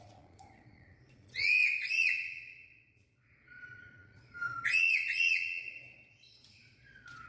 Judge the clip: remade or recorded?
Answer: remade